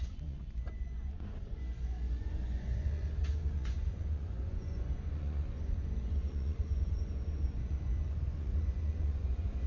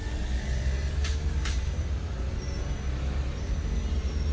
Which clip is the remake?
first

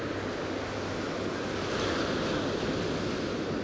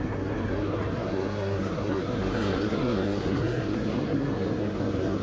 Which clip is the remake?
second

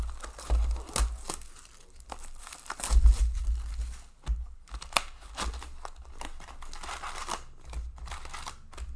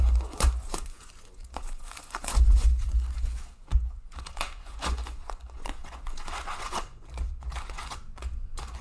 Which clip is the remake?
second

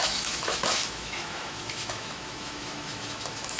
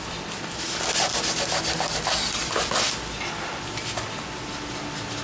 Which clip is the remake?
first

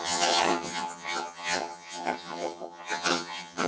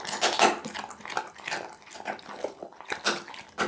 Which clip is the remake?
first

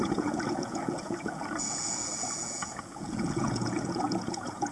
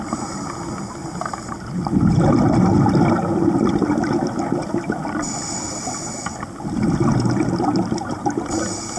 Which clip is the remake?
first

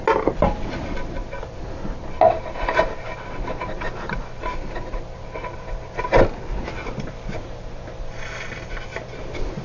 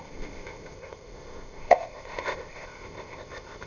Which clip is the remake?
second